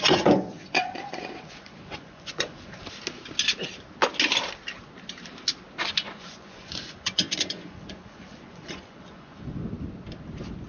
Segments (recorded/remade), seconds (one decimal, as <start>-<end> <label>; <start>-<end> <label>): 0.0-2.8 remade; 2.8-5.9 recorded; 5.9-9.6 remade; 9.6-10.7 recorded